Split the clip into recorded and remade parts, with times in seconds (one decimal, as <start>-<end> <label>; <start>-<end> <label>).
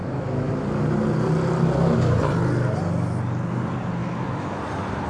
0.0-0.5 remade; 0.5-4.0 recorded; 4.0-4.6 remade; 4.6-5.1 recorded